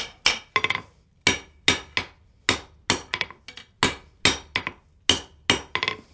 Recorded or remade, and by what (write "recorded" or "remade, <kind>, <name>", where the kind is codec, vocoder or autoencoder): recorded